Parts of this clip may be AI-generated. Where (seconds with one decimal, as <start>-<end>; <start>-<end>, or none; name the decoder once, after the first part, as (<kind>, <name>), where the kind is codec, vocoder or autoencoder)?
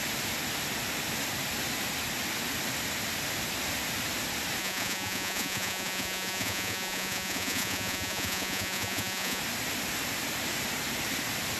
4.6-9.4 (vocoder, Vocos)